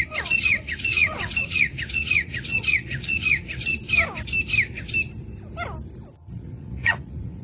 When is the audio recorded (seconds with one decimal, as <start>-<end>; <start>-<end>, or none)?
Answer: 3.8-6.3